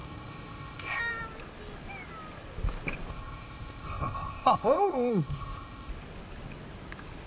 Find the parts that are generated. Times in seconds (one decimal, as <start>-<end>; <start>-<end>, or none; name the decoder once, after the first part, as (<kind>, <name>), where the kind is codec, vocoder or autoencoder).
0.0-1.0 (codec, ZipCodec); 3.1-5.9

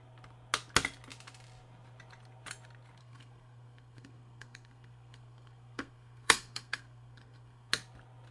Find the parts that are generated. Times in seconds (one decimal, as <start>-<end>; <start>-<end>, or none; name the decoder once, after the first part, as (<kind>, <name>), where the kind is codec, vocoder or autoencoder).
3.0-7.7 (codec, SNAC)

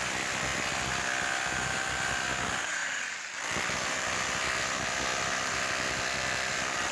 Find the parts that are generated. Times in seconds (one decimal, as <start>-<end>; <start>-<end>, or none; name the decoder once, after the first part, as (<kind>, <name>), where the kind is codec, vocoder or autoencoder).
0.0-0.5 (vocoder, BigVGAN v2); 2.4-6.9

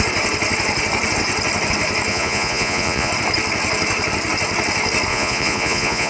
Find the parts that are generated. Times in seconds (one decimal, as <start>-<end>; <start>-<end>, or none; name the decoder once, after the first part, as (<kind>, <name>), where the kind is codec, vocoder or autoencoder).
2.1-3.1 (vocoder, Vocos); 5.1-6.1